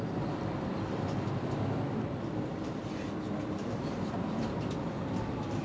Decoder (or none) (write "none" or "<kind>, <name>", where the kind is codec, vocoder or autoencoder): vocoder, BigVGAN v2